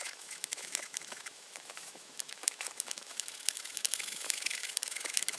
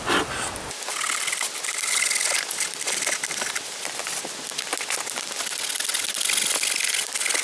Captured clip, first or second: second